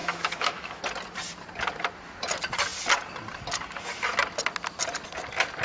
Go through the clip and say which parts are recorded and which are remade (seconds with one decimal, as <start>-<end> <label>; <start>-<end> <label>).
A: 0.0-0.8 remade; 0.8-5.6 recorded